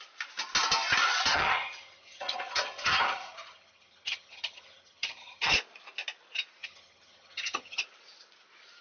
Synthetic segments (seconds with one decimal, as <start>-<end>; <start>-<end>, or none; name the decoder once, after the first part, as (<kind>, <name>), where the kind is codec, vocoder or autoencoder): 1.3-5.5 (vocoder, HiFi-GAN); 6.6-7.8